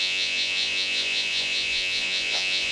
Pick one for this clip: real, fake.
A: fake